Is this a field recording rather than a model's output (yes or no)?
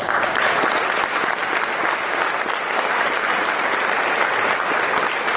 yes